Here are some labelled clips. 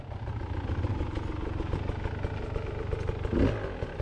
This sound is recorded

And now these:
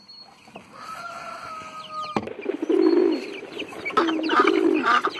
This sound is recorded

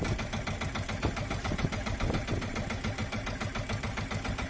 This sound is recorded